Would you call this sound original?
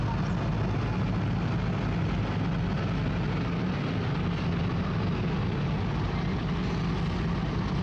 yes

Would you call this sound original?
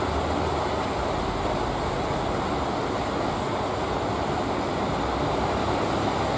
yes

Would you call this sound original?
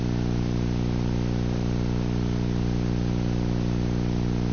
yes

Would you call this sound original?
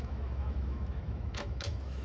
no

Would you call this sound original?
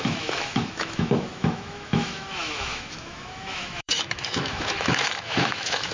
no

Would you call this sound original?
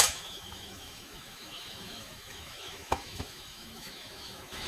no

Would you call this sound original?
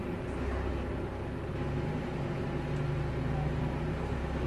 yes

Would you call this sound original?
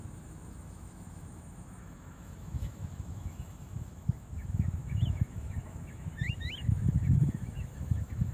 no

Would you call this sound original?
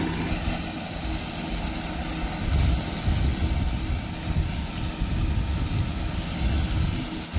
yes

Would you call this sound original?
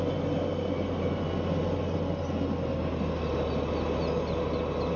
yes